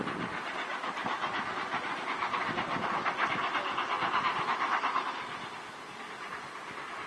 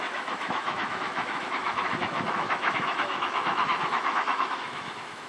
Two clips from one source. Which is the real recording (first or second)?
first